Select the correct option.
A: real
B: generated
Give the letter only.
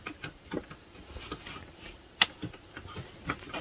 A